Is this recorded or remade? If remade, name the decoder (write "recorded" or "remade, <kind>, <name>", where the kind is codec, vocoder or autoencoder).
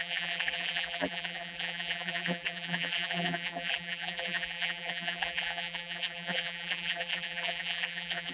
remade, vocoder, BigVGAN v2